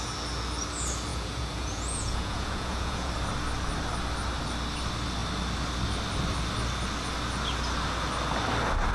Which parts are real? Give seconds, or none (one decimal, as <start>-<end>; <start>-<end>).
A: 0.0-1.1; 3.1-8.9